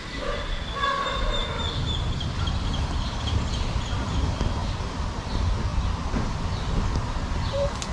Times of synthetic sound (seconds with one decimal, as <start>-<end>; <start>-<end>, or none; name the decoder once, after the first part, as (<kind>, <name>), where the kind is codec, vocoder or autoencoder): none